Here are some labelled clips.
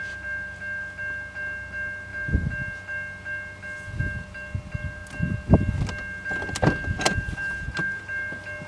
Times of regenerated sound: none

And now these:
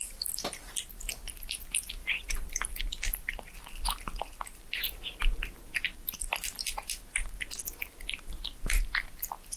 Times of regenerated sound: 2.0-2.8

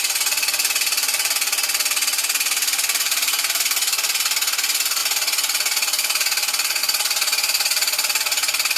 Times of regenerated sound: 3.0-3.6

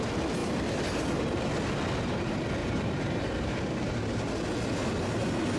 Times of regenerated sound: 0.4-1.5; 2.6-4.3